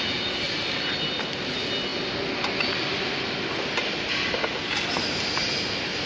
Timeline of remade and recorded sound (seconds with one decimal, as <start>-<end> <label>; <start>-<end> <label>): 0.0-6.1 recorded